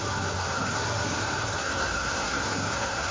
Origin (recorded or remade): remade